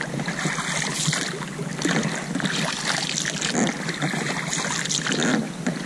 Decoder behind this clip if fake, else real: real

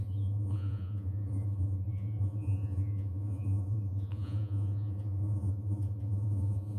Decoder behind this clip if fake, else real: fake, vocoder, Vocos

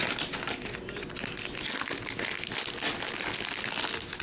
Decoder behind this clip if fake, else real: real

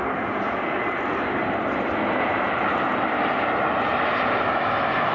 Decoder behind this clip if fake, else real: real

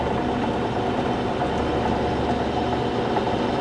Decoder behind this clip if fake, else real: real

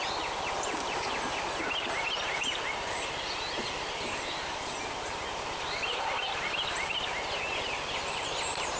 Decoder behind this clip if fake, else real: real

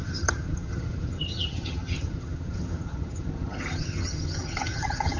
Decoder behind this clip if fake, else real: fake, vocoder, HiFi-GAN